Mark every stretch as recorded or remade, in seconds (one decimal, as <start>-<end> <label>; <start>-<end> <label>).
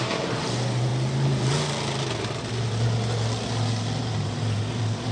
0.0-0.9 remade; 0.9-4.0 recorded; 4.0-5.1 remade